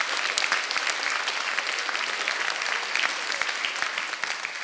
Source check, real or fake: real